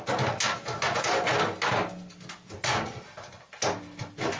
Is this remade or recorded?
recorded